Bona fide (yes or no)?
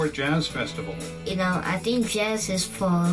yes